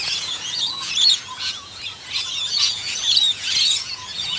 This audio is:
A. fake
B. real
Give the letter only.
A